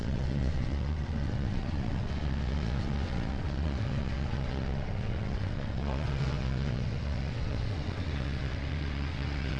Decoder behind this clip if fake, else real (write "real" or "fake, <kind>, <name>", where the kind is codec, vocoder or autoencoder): fake, vocoder, WaveNeXt